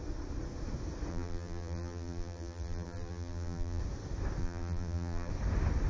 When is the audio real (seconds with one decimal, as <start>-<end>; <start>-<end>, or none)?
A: 0.0-1.1; 3.8-4.4; 5.3-5.9